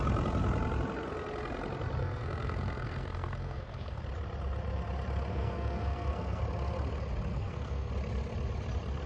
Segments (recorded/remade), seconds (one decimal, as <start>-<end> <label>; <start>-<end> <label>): 0.0-2.0 recorded; 2.0-4.0 remade; 4.0-5.3 recorded; 5.3-6.4 remade; 6.4-7.3 recorded; 7.3-7.9 remade; 7.9-9.1 recorded